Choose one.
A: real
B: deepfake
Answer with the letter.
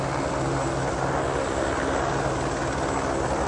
A